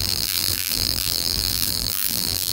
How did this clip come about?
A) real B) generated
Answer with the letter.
B